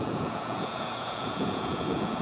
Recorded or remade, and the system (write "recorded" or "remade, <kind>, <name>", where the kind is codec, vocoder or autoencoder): remade, vocoder, Vocos